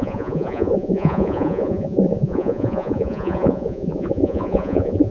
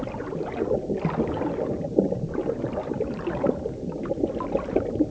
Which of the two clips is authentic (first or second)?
second